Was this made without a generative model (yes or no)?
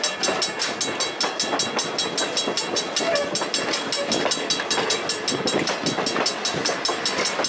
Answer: yes